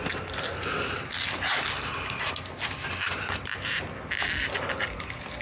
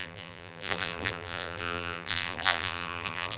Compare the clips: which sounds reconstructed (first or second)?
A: second